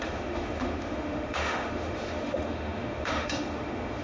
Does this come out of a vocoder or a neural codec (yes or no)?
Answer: yes